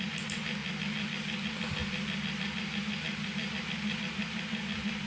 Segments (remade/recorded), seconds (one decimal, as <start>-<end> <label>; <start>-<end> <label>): 0.0-5.1 recorded